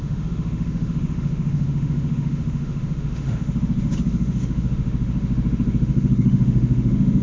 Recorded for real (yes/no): no